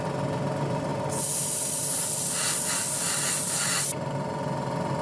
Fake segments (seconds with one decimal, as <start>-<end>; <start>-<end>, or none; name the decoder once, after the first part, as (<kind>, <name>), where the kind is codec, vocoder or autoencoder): none